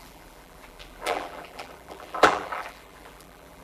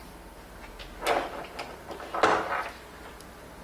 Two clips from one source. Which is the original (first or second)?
second